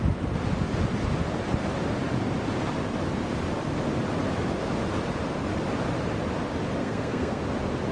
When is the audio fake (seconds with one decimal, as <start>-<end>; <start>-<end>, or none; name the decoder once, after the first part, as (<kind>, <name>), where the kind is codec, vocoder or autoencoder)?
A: 6.8-7.4 (codec, SNAC)